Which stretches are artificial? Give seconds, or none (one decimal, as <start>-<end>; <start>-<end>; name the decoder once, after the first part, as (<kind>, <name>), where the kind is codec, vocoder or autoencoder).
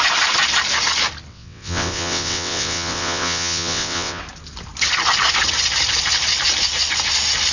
1.3-4.2 (vocoder, WaveNeXt)